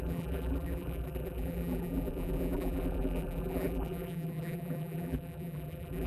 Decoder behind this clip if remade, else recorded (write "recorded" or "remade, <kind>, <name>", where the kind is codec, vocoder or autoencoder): remade, vocoder, BigVGAN v2